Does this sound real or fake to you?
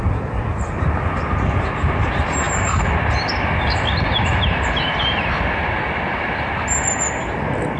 real